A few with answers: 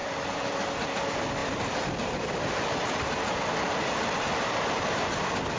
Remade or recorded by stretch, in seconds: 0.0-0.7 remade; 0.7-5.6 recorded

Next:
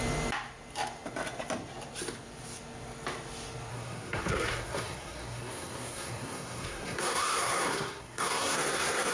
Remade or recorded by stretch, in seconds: 0.0-3.7 recorded; 3.7-9.1 remade

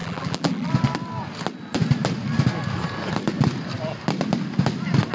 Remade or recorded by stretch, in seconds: 0.0-0.7 remade; 0.7-5.1 recorded

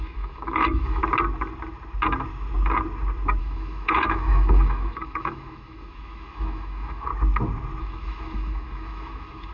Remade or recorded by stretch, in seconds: 0.0-1.0 remade; 1.0-3.4 recorded; 3.4-7.1 remade; 7.1-7.8 recorded; 7.8-9.5 remade

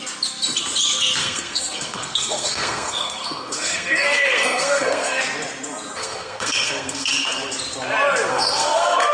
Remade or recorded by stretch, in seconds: 0.0-1.2 recorded; 1.2-5.2 remade; 5.2-6.0 recorded; 6.0-7.5 remade; 7.5-8.3 recorded; 8.3-9.1 remade